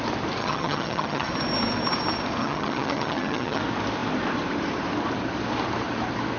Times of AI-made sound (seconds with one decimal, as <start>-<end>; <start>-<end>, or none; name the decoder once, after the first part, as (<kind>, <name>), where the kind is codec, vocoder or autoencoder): 0.4-1.3 (vocoder, HiFi-GAN); 2.4-3.6